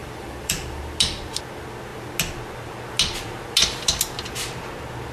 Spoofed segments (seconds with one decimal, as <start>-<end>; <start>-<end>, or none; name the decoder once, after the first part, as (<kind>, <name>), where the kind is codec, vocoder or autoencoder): 0.0-0.8 (vocoder, BigVGAN v2)